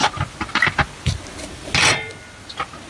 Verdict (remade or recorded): recorded